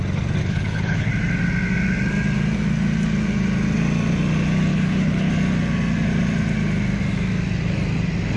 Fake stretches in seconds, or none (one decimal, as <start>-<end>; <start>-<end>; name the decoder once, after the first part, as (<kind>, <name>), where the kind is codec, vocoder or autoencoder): 0.4-1.1 (codec, HILCodec); 4.7-5.3